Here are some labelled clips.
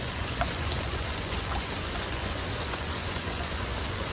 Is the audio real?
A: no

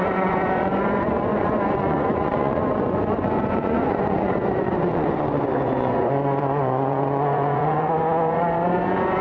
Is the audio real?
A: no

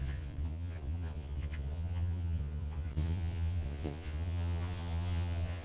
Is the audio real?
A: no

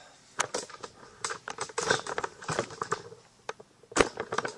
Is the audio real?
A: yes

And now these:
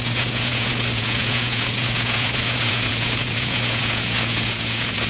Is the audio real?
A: no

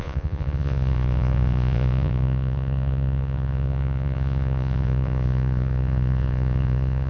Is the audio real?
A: no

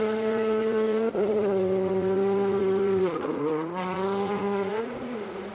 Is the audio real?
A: no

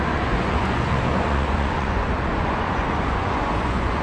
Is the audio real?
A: no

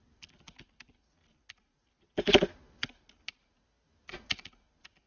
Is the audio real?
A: yes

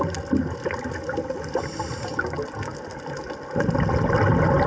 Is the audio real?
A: yes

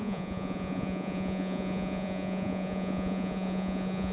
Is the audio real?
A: no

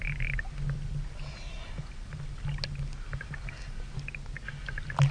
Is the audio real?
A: yes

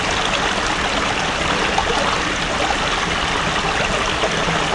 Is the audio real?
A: yes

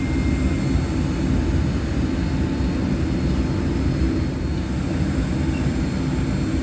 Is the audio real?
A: yes